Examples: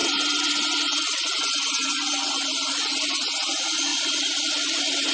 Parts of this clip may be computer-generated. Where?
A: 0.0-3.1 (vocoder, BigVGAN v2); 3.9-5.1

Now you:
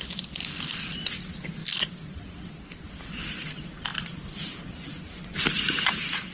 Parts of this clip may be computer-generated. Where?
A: 3.9-5.3 (vocoder, BigVGAN v2)

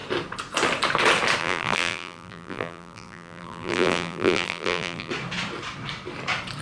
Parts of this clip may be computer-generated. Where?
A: 1.4-5.1 (vocoder, BigVGAN v2)

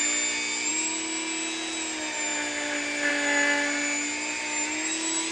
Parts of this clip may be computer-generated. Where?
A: none